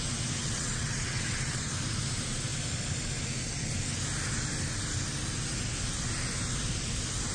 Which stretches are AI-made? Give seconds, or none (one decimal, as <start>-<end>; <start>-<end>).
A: 0.4-1.7